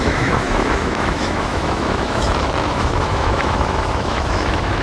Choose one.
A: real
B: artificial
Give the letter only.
B